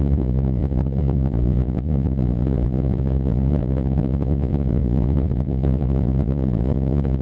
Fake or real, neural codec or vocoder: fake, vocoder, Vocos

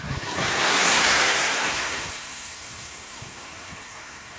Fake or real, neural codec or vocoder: fake, codec, SNAC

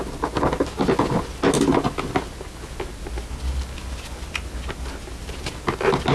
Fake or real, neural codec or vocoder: real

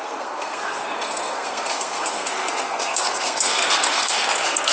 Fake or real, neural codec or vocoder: fake, codec, SNAC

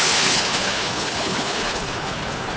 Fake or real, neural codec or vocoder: fake, codec, HILCodec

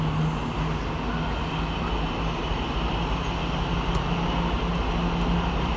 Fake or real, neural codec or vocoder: real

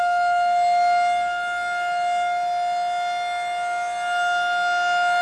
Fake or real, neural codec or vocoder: real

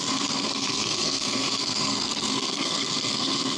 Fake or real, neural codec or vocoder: fake, codec, SNAC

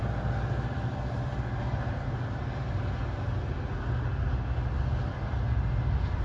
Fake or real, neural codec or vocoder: real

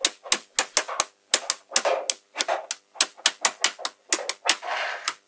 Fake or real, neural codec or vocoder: real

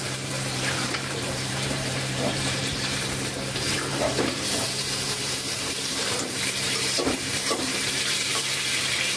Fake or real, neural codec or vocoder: fake, vocoder, BigVGAN v2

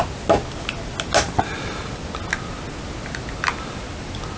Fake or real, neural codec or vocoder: real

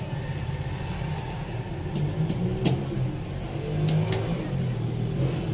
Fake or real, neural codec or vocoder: real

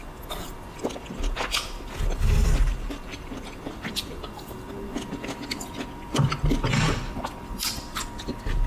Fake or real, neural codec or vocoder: real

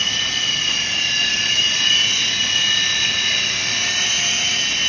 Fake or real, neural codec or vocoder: fake, vocoder, BigVGAN v2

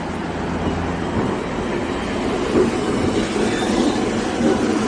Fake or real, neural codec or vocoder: real